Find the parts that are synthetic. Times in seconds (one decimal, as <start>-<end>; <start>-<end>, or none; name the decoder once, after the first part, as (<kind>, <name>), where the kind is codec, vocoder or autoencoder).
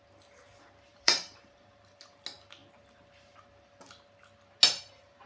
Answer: 0.9-2.0 (vocoder, BigVGAN v2)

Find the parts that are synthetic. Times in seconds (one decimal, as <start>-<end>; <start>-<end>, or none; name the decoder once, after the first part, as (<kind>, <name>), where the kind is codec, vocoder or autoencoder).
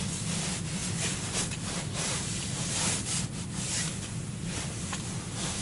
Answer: none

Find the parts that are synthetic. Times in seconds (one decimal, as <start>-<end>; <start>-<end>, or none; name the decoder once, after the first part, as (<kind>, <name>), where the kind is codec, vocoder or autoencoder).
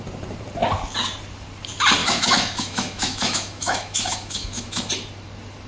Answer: 2.0-4.9 (autoencoder, DAC-VAE)